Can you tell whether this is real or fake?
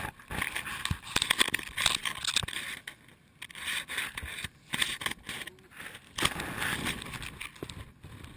real